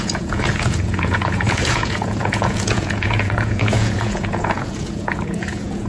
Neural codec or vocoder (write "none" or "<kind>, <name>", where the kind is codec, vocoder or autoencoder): vocoder, Vocos